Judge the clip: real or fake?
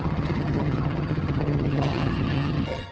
fake